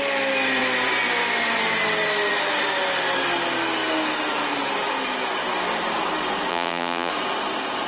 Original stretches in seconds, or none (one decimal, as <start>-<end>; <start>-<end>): 0.0-6.5; 7.1-7.9